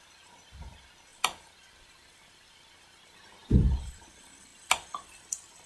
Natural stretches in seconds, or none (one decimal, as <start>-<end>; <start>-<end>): 0.0-1.1; 2.7-3.4; 3.9-5.7